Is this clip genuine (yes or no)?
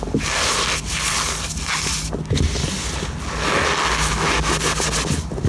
yes